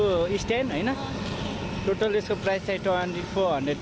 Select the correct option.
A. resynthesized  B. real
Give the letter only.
B